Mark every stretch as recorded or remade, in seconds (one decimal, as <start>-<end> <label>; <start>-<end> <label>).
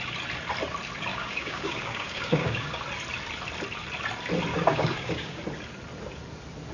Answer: 0.0-1.1 recorded; 1.1-2.8 remade; 2.8-4.5 recorded; 4.5-5.4 remade; 5.4-6.7 recorded